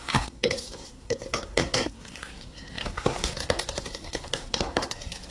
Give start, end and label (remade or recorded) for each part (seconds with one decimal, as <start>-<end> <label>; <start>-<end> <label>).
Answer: 0.0-5.3 remade